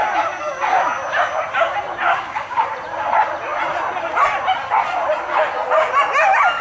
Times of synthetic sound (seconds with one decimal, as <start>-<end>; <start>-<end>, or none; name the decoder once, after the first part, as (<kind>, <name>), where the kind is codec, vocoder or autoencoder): 2.1-2.6 (codec, DAC)

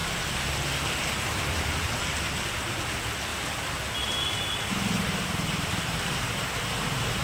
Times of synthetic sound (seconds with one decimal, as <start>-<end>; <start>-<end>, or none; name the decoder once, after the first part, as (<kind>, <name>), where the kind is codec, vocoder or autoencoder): none

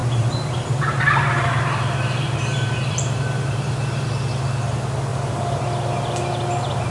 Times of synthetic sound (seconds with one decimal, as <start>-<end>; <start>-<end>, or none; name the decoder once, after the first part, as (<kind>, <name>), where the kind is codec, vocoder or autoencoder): 0.0-4.1 (vocoder, BigVGAN v2); 5.1-5.7

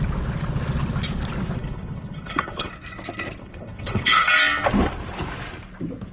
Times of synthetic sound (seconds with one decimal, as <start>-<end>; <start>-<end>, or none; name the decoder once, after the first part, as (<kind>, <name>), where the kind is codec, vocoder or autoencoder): 1.6-2.7 (codec, HILCodec); 3.4-4.3

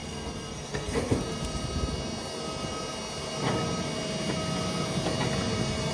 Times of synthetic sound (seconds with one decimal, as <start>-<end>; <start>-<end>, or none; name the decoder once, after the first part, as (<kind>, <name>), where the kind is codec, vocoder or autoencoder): 0.0-1.2 (codec, SNAC)

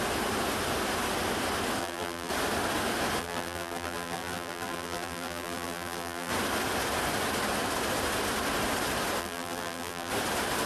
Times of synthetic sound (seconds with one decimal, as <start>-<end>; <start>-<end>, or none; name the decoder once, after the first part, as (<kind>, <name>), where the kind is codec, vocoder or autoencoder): 1.8-2.3 (vocoder, BigVGAN v2); 3.2-6.3; 9.2-10.1